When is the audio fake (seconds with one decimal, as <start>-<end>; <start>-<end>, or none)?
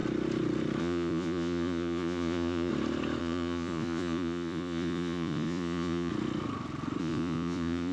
0.8-2.7; 3.2-6.1; 7.0-7.9